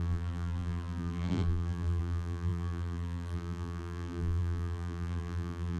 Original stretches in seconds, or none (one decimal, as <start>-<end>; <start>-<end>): none